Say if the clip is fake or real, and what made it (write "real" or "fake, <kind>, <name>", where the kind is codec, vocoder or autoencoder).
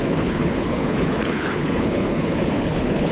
fake, codec, HILCodec